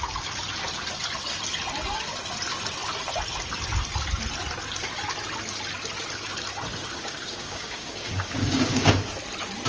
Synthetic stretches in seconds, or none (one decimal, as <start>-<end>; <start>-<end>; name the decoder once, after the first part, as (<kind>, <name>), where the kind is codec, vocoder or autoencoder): 6.8-8.9 (codec, DAC)